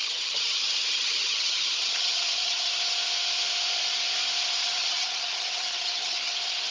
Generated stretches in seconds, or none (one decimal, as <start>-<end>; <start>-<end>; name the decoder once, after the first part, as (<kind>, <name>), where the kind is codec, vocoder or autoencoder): 0.0-2.7 (vocoder, HiFi-GAN); 4.6-6.3